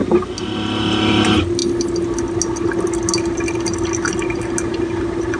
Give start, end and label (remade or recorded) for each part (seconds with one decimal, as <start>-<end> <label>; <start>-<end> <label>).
0.0-5.4 recorded

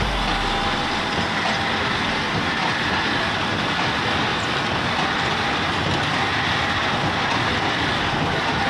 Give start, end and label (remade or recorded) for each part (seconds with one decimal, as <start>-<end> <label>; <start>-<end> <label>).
0.0-8.7 recorded

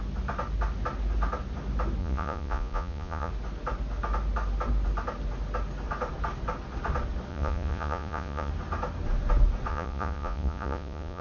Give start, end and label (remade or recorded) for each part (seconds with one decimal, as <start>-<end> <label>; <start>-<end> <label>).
0.0-2.0 recorded; 2.0-3.3 remade; 3.3-7.3 recorded; 7.3-8.5 remade; 8.5-9.7 recorded; 9.7-11.2 remade

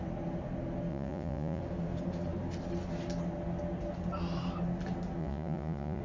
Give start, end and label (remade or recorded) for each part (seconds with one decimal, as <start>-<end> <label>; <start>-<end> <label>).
0.0-0.9 recorded; 0.9-1.6 remade; 1.6-5.2 recorded; 5.2-6.0 remade

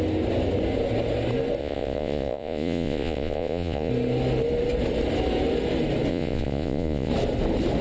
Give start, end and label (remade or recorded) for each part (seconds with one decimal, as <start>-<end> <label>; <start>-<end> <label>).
0.0-1.6 recorded; 1.6-3.9 remade; 3.9-6.1 recorded; 6.1-7.1 remade; 7.1-7.8 recorded

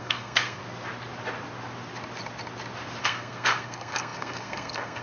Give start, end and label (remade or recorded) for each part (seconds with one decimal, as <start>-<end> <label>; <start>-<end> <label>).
0.0-0.6 remade; 0.6-3.0 recorded; 3.0-5.0 remade

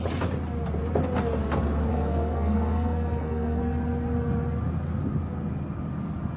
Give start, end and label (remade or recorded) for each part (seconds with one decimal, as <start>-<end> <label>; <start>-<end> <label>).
0.0-1.9 recorded; 1.9-3.6 remade; 3.6-6.4 recorded